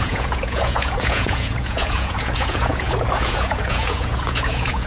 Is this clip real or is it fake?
fake